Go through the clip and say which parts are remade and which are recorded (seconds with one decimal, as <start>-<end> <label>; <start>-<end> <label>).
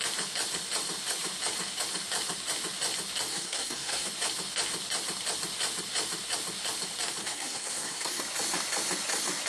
0.0-3.3 recorded; 3.3-4.1 remade; 4.1-7.2 recorded; 7.2-8.2 remade; 8.2-9.5 recorded